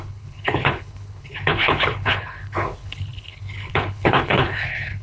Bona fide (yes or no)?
no